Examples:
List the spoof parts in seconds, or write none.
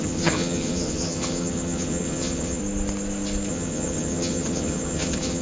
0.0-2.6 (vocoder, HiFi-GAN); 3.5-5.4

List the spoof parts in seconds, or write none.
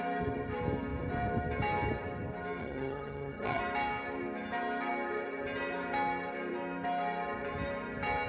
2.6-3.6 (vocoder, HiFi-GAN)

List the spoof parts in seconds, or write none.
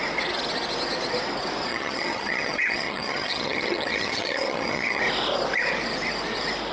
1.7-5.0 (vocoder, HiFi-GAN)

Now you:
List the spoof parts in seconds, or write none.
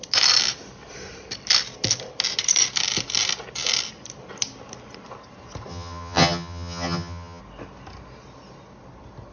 5.7-7.4 (vocoder, HiFi-GAN)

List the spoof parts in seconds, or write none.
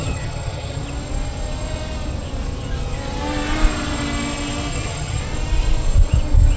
0.0-0.8 (vocoder, HiFi-GAN); 4.7-5.2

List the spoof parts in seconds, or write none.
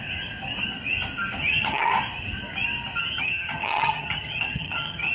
1.4-1.9 (vocoder, HiFi-GAN); 3.0-5.1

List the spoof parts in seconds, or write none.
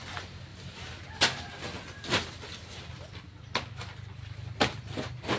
none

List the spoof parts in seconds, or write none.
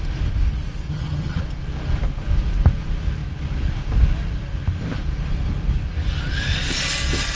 0.9-1.4 (vocoder, HiFi-GAN)